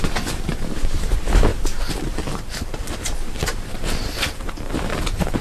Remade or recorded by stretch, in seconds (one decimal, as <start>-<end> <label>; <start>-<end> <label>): 0.0-0.5 recorded; 0.5-1.1 remade; 1.1-1.5 recorded; 1.5-4.7 remade; 4.7-5.4 recorded